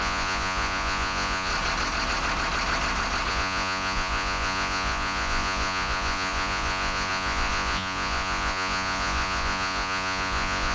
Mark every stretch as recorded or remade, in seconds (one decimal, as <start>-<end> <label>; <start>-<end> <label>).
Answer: 0.0-1.5 remade; 1.5-3.3 recorded; 3.3-10.7 remade

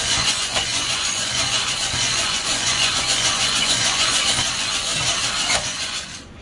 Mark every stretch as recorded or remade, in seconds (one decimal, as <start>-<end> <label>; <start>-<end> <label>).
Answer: 0.0-4.9 remade; 4.9-5.5 recorded; 5.5-6.4 remade

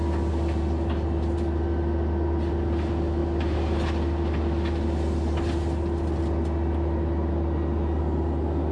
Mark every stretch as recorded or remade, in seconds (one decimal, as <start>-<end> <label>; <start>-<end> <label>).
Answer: 0.0-8.7 recorded

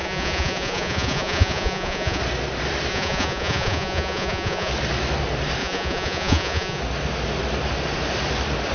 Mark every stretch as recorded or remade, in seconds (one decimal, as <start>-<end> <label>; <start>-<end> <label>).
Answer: 0.0-2.2 remade; 2.2-2.9 recorded; 2.9-4.7 remade; 4.7-5.6 recorded; 5.6-6.8 remade; 6.8-8.7 recorded

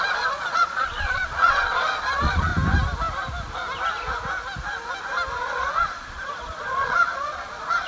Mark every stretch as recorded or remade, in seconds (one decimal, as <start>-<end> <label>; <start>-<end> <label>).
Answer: 0.0-2.5 remade; 2.5-5.4 recorded; 5.4-7.9 remade

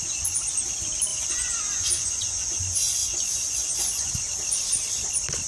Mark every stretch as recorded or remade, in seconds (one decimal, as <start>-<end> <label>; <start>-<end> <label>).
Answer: 0.0-1.1 recorded; 1.1-2.6 remade; 2.6-3.0 recorded; 3.0-4.1 remade; 4.1-5.5 recorded

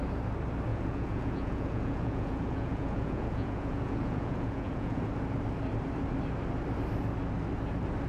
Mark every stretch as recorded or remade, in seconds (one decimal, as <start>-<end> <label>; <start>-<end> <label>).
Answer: 0.0-0.7 recorded; 0.7-5.1 remade; 5.1-8.1 recorded

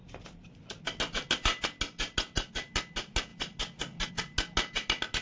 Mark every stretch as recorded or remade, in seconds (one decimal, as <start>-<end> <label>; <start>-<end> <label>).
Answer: 0.0-5.2 recorded